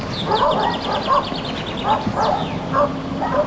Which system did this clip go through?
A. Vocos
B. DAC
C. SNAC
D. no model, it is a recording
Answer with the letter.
D